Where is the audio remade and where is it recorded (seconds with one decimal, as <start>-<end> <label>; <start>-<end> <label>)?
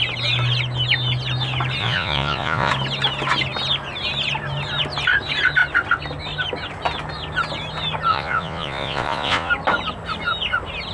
0.0-1.8 recorded; 1.8-2.7 remade; 2.7-8.1 recorded; 8.1-9.5 remade; 9.5-10.9 recorded